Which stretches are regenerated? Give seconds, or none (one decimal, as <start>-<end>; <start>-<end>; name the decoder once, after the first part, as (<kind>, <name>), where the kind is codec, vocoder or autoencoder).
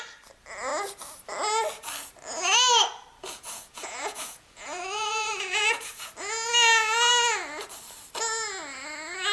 3.2-6.1 (vocoder, Vocos)